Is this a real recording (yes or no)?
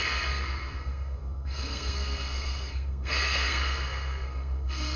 no